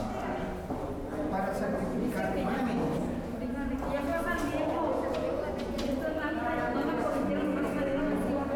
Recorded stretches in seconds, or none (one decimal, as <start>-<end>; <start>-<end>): 0.0-1.1; 2.6-4.1; 7.3-8.6